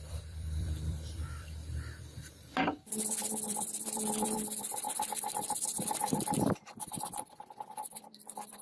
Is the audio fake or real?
fake